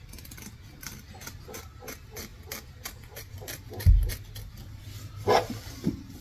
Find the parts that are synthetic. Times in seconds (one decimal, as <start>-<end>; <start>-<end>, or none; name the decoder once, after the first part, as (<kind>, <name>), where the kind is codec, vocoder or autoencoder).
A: none